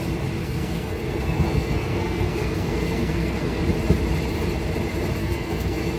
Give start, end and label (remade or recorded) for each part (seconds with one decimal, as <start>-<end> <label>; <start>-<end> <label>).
0.0-0.4 recorded; 0.4-3.6 remade; 3.6-5.2 recorded; 5.2-6.0 remade